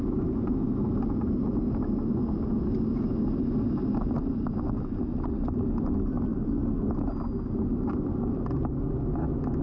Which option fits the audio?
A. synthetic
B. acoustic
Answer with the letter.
B